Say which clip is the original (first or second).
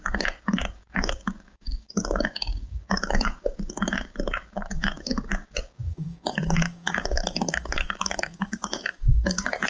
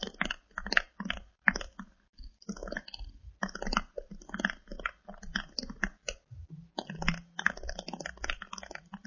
second